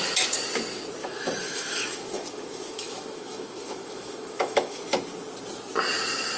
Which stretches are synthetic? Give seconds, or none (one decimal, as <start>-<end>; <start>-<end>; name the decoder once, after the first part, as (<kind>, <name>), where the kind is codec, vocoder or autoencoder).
1.0-4.8 (autoencoder, DAC-VAE)